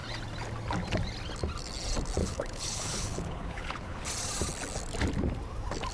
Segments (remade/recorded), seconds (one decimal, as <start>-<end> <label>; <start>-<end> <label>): 0.0-2.2 recorded; 2.2-4.0 remade; 4.0-5.9 recorded

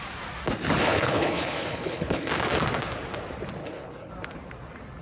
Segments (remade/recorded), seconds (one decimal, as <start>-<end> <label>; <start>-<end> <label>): 0.0-0.8 recorded; 0.8-2.3 remade; 2.3-3.6 recorded; 3.6-4.1 remade; 4.1-5.0 recorded